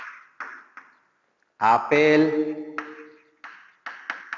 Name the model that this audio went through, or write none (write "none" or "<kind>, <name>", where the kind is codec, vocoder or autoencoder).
none